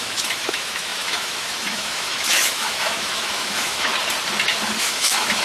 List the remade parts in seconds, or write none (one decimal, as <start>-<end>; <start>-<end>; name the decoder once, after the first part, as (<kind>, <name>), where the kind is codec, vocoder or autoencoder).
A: 0.0-3.9 (autoencoder, DAC-VAE); 4.8-5.4